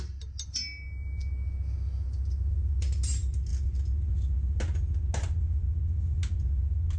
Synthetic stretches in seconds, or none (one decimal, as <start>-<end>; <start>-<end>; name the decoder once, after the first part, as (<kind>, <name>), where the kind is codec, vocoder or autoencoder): none